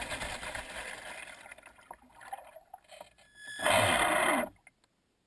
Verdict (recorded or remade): recorded